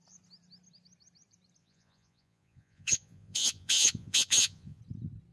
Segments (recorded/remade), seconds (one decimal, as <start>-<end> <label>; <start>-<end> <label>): 0.0-1.6 recorded; 1.6-4.8 remade; 4.8-5.3 recorded